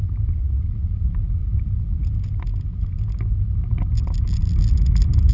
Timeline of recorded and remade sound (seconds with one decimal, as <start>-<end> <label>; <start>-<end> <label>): 0.0-5.3 recorded